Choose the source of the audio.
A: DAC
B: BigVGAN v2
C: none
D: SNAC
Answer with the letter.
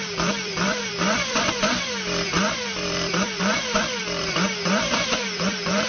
B